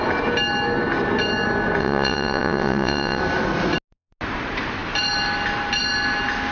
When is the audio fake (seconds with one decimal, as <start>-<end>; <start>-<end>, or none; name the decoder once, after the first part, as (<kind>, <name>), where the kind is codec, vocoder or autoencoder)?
1.8-3.2 (vocoder, WaveNeXt)